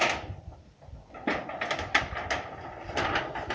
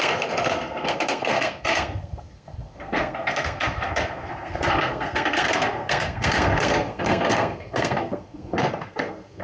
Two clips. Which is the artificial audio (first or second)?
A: second